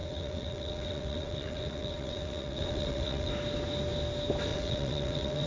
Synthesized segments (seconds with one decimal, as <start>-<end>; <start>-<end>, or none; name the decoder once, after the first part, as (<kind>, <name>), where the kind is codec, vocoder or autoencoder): 0.0-3.3 (vocoder, WaveNeXt); 4.5-5.5